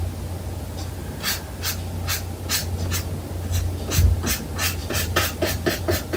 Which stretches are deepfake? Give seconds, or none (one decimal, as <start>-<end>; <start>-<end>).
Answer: 4.8-5.8